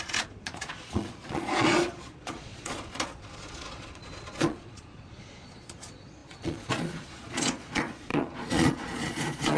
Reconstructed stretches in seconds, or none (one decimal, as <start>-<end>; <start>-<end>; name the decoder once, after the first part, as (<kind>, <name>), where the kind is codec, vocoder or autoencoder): 0.0-9.6 (vocoder, Vocos)